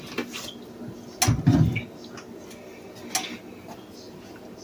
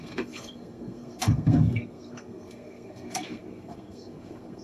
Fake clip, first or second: second